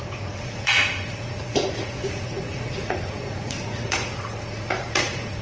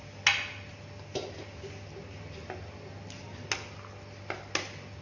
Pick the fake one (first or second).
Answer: first